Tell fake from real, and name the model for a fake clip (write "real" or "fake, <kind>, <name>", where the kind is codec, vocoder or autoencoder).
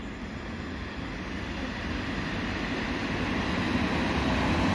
real